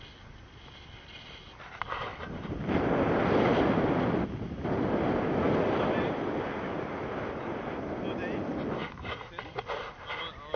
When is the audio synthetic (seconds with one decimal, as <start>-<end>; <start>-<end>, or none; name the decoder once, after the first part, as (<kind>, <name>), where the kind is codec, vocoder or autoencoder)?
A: none